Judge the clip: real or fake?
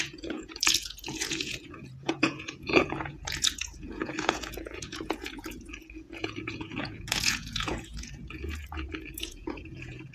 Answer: fake